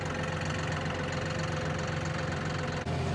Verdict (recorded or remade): recorded